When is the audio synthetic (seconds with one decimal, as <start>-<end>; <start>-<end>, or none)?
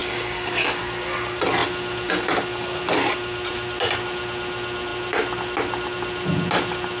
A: 0.0-0.8